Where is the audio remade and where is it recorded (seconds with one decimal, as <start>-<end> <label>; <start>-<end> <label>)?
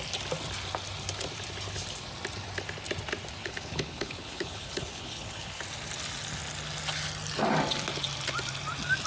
0.0-3.4 recorded; 3.4-5.6 remade; 5.6-9.1 recorded